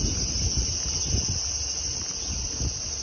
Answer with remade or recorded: recorded